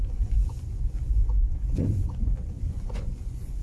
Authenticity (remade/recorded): remade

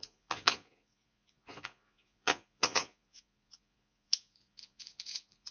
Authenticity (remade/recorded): remade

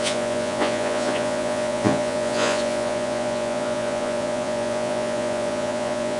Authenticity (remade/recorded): remade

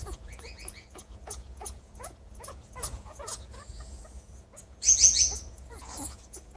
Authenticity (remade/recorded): remade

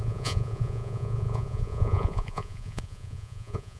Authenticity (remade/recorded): remade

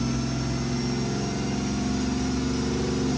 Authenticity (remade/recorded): recorded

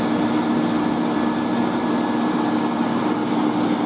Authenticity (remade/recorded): recorded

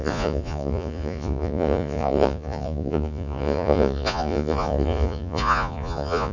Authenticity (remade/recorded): remade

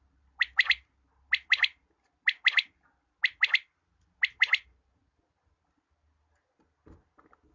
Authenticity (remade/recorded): recorded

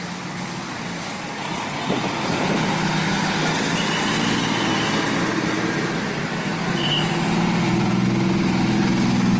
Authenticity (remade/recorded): recorded